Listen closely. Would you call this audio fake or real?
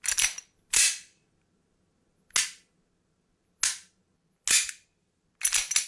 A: real